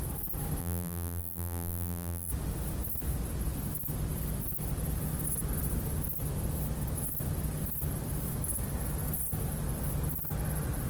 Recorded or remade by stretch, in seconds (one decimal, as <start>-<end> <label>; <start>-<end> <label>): 0.0-0.6 recorded; 0.6-2.3 remade; 2.3-10.9 recorded

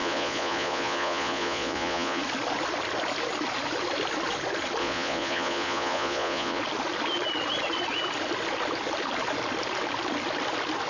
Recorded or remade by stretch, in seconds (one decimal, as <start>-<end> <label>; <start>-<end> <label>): 0.0-2.2 remade; 2.2-4.8 recorded; 4.8-6.6 remade; 6.6-10.9 recorded

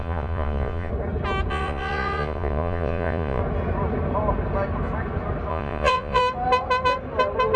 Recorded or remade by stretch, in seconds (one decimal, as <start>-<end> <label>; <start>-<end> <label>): 0.0-0.9 remade; 0.9-1.5 recorded; 1.5-3.4 remade; 3.4-5.5 recorded; 5.5-6.2 remade; 6.2-7.6 recorded

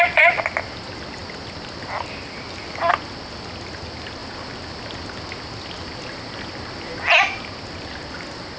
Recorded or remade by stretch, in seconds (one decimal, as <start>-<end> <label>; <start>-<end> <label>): 0.0-8.6 recorded

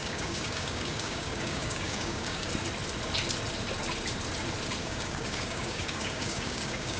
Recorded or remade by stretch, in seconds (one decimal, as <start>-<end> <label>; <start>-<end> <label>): 0.0-2.5 remade; 2.5-4.8 recorded; 4.8-7.0 remade

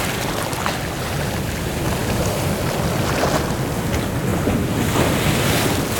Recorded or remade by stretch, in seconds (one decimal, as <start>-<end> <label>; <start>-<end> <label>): 0.0-6.0 recorded

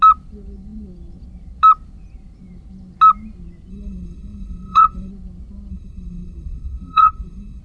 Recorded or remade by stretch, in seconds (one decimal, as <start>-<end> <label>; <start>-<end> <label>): 0.0-3.7 recorded; 3.7-5.1 remade; 5.1-5.7 recorded; 5.7-7.6 remade

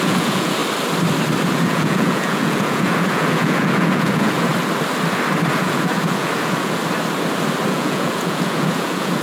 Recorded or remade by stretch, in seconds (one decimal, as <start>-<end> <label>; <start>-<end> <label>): 0.0-0.6 remade; 0.6-1.5 recorded; 1.5-4.5 remade; 4.5-5.5 recorded; 5.5-6.8 remade; 6.8-7.7 recorded; 7.7-9.2 remade